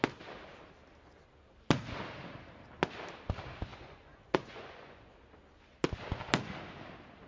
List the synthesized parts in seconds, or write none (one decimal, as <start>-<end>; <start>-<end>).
3.7-5.1

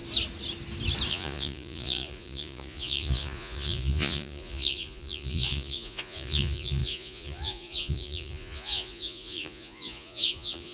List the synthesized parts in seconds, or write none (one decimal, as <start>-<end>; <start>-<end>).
1.1-10.7

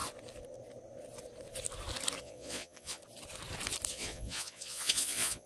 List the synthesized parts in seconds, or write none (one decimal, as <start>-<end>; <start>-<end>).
2.2-3.0; 3.9-5.5

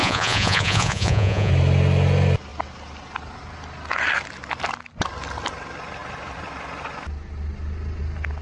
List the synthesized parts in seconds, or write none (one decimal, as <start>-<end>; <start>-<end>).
0.0-1.5

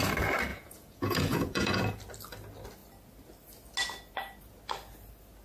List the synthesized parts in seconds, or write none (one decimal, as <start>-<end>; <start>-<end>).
0.5-1.8

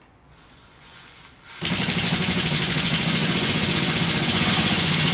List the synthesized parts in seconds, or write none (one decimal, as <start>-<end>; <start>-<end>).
0.0-1.2; 2.0-5.1